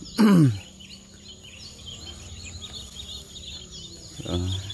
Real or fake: real